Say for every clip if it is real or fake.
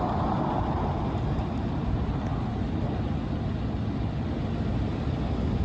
real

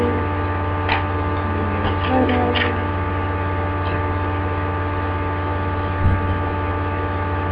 real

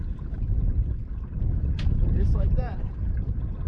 fake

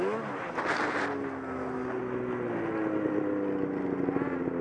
real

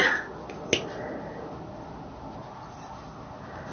real